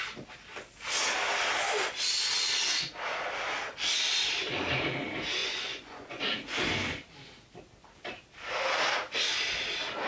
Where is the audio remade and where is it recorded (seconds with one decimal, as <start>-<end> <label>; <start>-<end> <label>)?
0.0-5.4 recorded; 5.4-6.2 remade; 6.2-10.1 recorded